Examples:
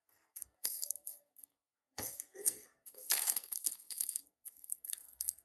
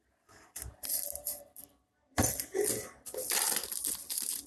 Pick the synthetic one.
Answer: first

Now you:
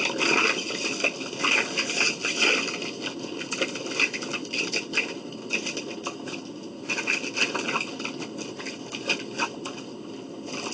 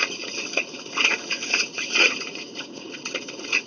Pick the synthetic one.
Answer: second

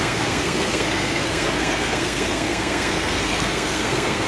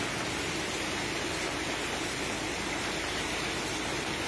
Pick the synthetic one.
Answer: first